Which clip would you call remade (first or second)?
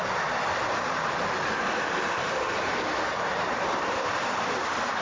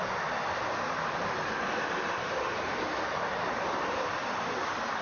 first